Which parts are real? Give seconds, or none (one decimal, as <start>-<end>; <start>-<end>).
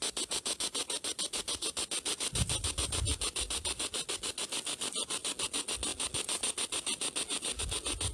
0.0-8.1